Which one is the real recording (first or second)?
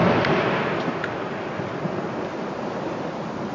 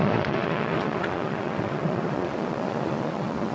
first